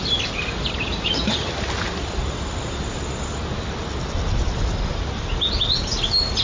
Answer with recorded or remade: recorded